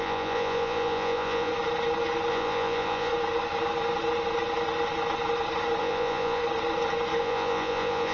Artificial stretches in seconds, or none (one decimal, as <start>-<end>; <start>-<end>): 0.0-1.5; 2.3-3.1; 5.8-6.4; 7.2-8.1